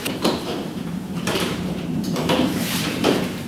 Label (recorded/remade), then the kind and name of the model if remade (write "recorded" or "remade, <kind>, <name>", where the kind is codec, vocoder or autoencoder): remade, vocoder, BigVGAN v2